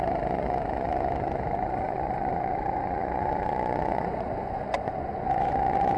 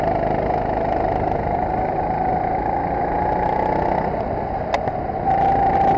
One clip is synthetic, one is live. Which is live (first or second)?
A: second